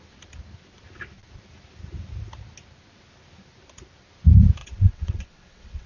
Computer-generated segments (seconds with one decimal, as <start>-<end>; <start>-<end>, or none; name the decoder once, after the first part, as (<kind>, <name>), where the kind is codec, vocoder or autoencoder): 4.6-5.9 (vocoder, WaveNeXt)